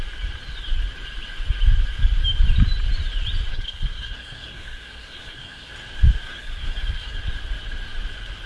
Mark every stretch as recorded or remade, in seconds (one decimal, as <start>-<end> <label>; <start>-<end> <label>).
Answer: 0.0-3.5 recorded; 3.5-5.7 remade; 5.7-6.2 recorded; 6.2-7.2 remade; 7.2-8.5 recorded